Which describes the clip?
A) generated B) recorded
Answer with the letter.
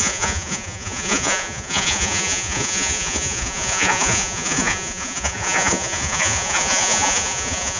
A